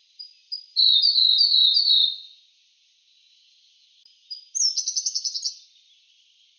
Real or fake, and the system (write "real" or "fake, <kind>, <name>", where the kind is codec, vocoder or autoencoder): real